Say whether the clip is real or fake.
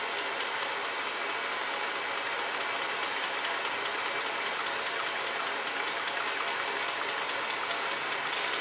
real